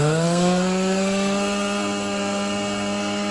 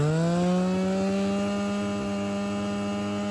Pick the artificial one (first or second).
first